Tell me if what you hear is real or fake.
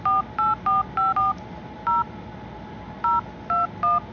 real